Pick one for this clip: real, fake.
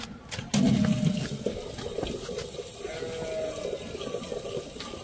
real